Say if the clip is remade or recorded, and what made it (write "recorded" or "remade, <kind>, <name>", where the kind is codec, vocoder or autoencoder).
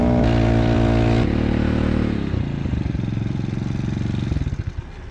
recorded